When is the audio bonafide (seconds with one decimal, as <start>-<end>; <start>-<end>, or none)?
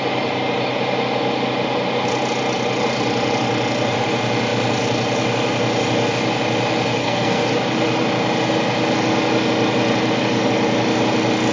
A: 0.0-7.0; 7.5-11.5